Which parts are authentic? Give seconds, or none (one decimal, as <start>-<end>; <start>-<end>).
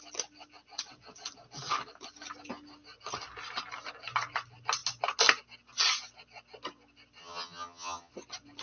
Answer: 0.0-7.2; 8.1-8.6